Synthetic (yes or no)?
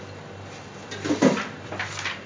no